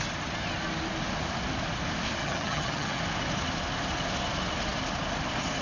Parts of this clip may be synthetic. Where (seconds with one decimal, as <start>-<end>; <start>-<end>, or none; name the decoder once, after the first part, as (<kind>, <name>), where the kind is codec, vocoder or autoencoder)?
2.2-3.0 (vocoder, HiFi-GAN)